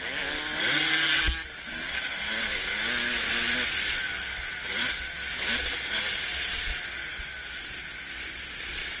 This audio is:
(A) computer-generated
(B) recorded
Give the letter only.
B